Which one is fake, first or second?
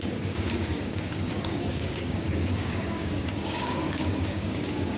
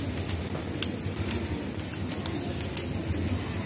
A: first